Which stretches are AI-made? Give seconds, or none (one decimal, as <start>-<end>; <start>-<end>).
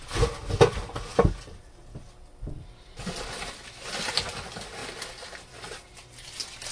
none